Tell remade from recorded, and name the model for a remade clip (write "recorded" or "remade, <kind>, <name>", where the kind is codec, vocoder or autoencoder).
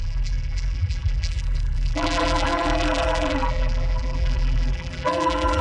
remade, vocoder, BigVGAN v2